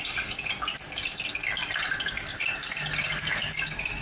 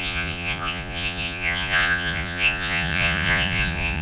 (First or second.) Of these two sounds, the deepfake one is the second